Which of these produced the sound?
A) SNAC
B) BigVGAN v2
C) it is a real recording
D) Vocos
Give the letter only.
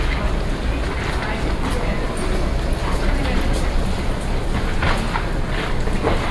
C